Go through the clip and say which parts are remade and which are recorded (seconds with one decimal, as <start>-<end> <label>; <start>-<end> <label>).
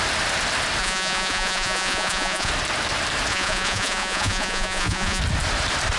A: 0.0-0.8 recorded; 0.8-2.5 remade; 2.5-3.3 recorded; 3.3-5.2 remade; 5.2-6.0 recorded